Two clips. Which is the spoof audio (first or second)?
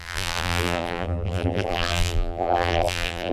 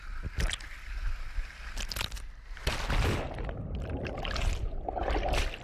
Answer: first